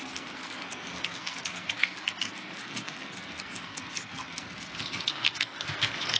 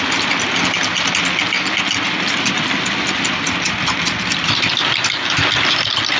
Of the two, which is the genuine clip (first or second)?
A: second